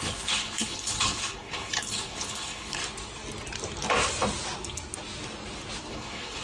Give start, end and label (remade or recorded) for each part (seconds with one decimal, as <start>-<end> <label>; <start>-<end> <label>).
0.0-2.8 remade; 2.8-5.9 recorded; 5.9-6.4 remade